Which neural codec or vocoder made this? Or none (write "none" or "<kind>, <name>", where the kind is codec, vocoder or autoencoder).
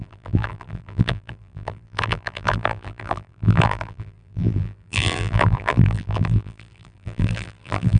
vocoder, BigVGAN v2